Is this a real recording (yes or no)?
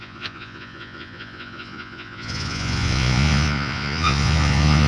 no